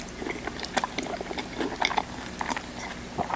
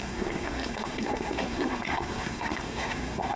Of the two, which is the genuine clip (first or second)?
first